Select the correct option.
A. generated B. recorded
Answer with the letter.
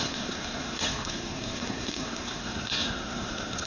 A